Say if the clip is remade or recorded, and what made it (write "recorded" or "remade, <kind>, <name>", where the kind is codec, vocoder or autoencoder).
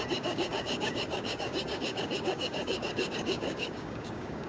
remade, codec, DAC